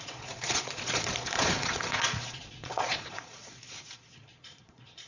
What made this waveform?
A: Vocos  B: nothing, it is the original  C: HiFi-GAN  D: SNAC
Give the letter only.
A